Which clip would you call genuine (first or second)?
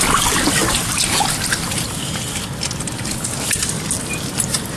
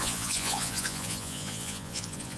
first